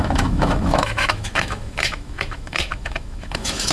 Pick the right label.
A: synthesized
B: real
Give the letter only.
A